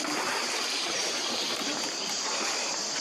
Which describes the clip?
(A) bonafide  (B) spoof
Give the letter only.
B